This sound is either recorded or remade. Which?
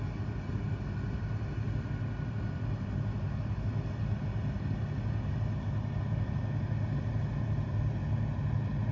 recorded